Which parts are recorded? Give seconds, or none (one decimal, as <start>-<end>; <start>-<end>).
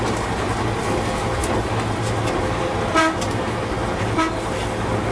0.0-5.1